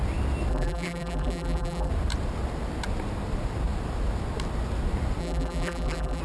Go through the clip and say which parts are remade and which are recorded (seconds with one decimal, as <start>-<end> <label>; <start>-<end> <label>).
0.0-0.5 recorded; 0.5-1.9 remade; 1.9-5.2 recorded; 5.2-6.2 remade